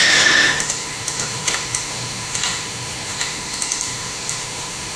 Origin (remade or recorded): remade